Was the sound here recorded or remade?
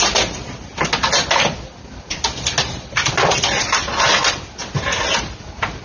recorded